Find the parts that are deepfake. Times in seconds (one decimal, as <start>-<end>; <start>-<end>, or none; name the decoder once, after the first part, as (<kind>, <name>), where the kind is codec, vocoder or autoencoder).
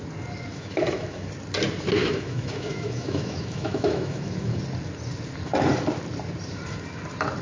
0.5-1.3 (autoencoder, DAC-VAE); 2.0-4.6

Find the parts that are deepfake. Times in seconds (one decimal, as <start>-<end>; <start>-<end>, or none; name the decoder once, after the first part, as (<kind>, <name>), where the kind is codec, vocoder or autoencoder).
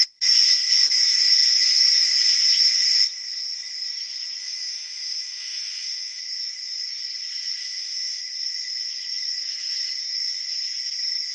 4.4-6.2 (autoencoder, DAC-VAE); 7.6-8.2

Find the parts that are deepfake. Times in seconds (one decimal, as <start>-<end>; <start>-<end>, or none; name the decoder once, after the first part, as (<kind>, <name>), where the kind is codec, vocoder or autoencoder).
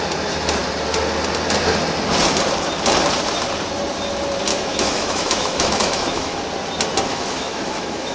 4.5-6.4 (autoencoder, DAC-VAE); 7.1-8.1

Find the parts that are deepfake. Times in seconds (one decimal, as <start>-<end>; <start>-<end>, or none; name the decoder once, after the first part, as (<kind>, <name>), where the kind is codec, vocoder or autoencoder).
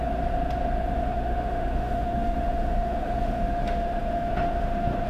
1.0-5.1 (autoencoder, DAC-VAE)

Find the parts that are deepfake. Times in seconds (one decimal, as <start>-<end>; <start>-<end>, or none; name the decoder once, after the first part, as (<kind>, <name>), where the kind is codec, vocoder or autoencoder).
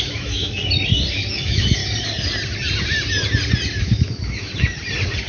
0.0-0.6 (autoencoder, DAC-VAE); 1.3-1.8; 3.8-4.5